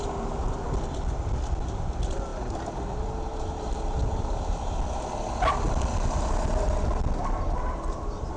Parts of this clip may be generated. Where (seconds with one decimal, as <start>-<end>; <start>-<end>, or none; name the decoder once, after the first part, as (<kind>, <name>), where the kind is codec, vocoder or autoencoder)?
none